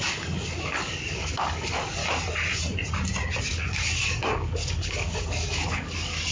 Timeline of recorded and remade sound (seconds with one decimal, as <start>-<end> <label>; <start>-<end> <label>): 0.0-2.0 remade; 2.0-3.4 recorded; 3.4-6.3 remade